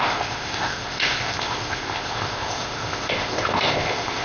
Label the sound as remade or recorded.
remade